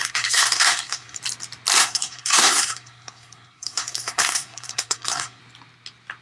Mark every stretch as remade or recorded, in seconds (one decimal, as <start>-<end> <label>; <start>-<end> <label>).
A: 0.0-1.2 remade; 1.2-1.8 recorded; 1.8-5.4 remade; 5.4-6.2 recorded